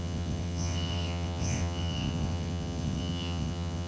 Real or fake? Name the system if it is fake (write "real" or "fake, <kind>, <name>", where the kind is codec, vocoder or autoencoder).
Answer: fake, vocoder, WaveNeXt